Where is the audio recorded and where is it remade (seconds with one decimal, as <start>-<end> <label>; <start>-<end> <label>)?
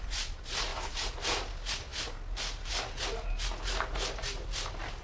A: 0.0-0.7 recorded; 0.7-1.4 remade; 1.4-5.0 recorded